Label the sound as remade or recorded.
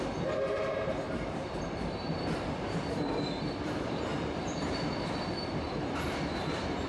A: remade